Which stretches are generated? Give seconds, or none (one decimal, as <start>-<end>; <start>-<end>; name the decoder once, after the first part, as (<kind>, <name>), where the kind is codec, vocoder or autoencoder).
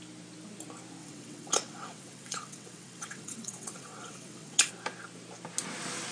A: 1.0-4.7 (vocoder, WaveNeXt)